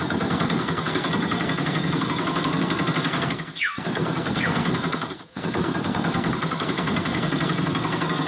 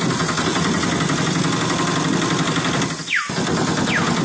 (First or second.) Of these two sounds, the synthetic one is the first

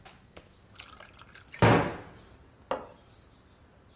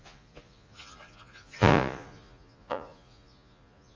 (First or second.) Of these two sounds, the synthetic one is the second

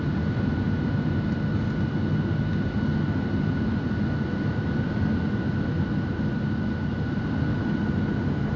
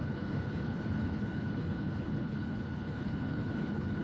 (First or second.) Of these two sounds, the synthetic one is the second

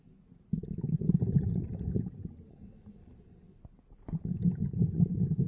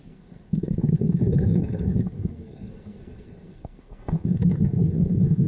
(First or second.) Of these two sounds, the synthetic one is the second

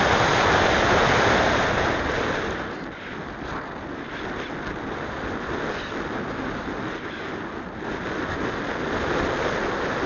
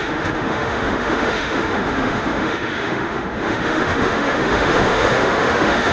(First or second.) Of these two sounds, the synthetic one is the second